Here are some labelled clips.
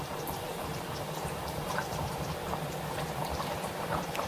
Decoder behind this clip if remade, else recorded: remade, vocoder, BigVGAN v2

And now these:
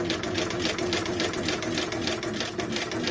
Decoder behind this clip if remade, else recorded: recorded